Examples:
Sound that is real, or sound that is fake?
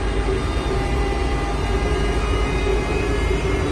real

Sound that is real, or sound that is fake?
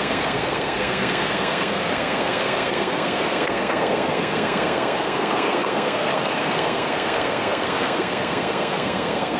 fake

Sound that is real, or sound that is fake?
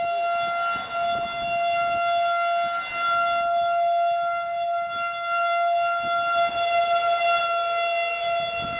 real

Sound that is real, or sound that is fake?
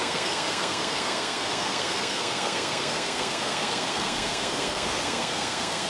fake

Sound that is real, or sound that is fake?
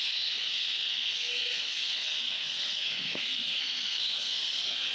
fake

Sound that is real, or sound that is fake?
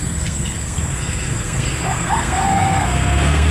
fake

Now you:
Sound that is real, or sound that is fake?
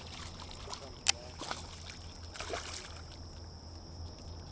real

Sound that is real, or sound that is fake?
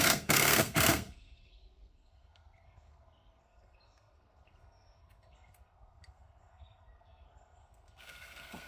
fake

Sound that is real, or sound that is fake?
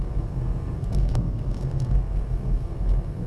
fake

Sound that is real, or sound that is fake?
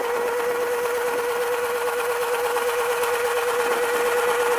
real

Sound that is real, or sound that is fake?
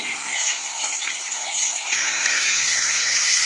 fake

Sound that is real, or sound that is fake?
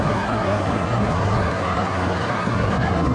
fake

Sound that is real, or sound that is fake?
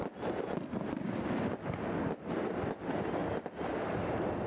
real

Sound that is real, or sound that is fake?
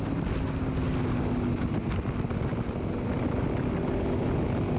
real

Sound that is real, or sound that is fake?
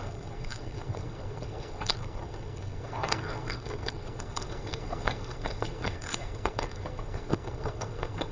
fake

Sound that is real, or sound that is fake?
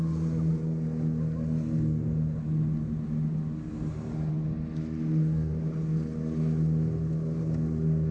real